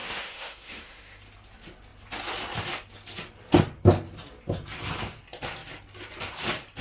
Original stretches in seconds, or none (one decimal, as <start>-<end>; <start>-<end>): 1.2-6.8